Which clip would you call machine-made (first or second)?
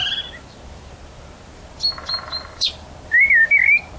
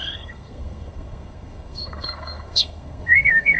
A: second